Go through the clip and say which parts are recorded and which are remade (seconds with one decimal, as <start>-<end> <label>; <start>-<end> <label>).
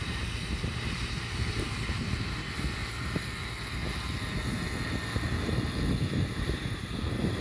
0.0-2.8 remade; 2.8-6.1 recorded; 6.1-7.4 remade